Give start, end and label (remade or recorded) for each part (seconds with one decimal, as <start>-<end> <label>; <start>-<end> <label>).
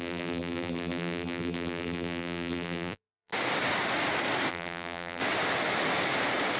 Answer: 0.0-3.3 remade; 3.3-4.5 recorded; 4.5-5.2 remade; 5.2-6.6 recorded